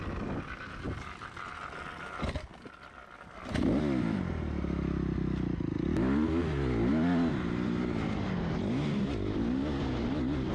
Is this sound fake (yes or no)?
no